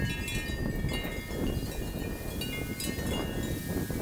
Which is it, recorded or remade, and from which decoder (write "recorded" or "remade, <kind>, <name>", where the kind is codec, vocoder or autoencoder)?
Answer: recorded